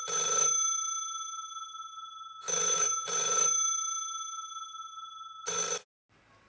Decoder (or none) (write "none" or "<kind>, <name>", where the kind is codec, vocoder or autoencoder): none